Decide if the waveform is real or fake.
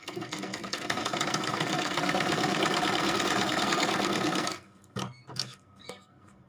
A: fake